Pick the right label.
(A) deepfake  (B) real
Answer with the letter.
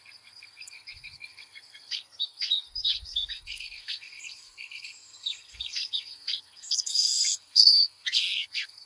A